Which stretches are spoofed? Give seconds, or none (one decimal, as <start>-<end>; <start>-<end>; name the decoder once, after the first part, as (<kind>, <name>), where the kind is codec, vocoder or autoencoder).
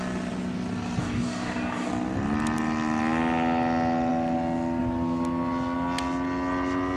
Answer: 1.0-1.9 (codec, DAC)